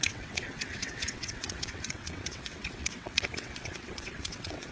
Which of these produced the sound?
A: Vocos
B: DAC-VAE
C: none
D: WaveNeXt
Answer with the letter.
D